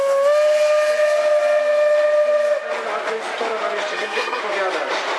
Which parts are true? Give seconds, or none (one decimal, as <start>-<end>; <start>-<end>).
0.0-3.9; 4.4-5.2